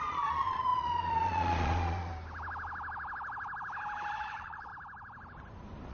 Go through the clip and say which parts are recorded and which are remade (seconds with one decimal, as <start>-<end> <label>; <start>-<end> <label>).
0.0-2.1 remade; 2.1-4.1 recorded; 4.1-4.7 remade; 4.7-5.9 recorded